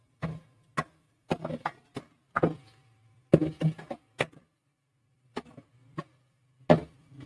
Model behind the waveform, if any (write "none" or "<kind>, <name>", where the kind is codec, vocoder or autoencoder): none